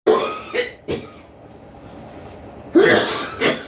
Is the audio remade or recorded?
recorded